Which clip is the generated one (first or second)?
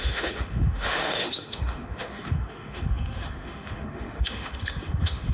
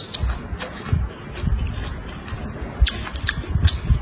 first